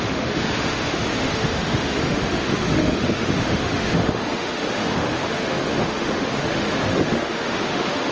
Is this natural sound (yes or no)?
no